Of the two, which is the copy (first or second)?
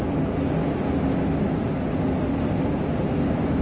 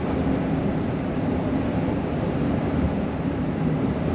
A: second